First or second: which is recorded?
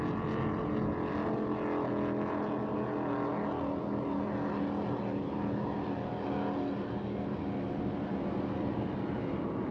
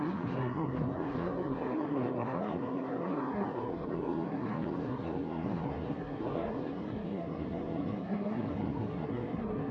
first